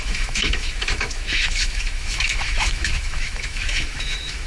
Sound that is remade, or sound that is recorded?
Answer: remade